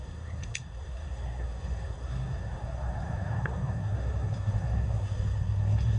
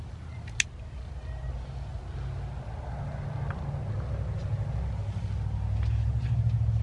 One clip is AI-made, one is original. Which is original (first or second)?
second